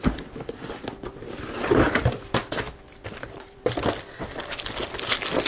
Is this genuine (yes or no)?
no